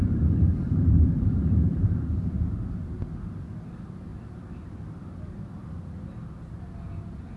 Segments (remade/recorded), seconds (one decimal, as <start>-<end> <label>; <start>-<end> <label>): 0.0-0.5 recorded; 0.5-2.3 remade; 2.3-7.4 recorded